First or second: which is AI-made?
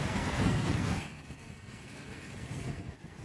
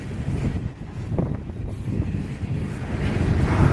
first